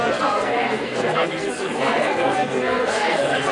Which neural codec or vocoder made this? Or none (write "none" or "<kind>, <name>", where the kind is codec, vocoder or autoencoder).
codec, SNAC